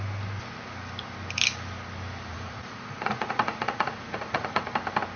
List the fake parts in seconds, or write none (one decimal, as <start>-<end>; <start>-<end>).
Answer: 2.3-4.6